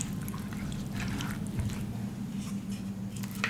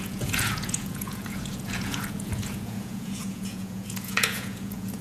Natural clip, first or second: first